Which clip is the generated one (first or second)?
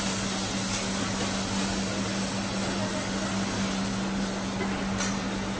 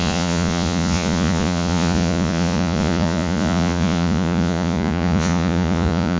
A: second